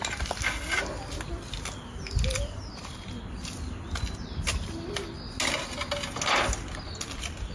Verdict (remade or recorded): recorded